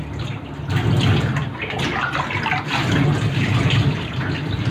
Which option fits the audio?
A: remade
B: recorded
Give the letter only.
A